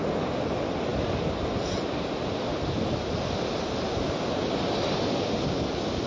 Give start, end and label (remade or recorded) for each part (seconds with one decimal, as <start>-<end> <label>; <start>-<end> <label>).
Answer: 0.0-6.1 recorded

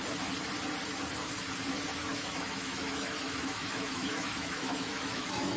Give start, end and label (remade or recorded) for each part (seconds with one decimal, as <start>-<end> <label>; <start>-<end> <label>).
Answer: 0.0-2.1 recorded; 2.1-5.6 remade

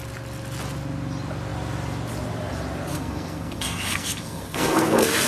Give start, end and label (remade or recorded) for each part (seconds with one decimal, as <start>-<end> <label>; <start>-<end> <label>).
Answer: 0.0-2.9 recorded; 2.9-5.3 remade